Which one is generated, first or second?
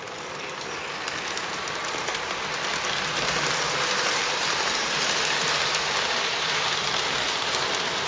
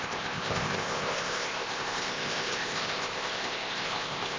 second